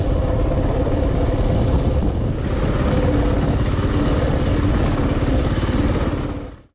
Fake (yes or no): no